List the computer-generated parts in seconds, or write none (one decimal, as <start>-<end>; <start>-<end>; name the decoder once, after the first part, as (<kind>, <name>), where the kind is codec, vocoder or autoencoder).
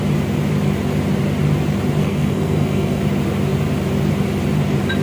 2.0-3.0 (codec, SNAC)